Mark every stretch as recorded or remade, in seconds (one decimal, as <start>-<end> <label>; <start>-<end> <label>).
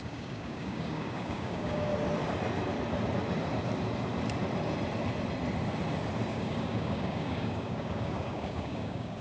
0.0-1.9 remade; 1.9-6.3 recorded; 6.3-9.2 remade